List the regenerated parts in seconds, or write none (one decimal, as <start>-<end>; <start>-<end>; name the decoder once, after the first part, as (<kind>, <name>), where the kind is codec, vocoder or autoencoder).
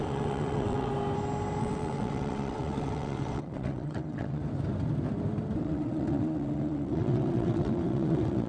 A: 0.0-0.9 (vocoder, WaveNeXt); 1.6-4.4; 5.6-8.5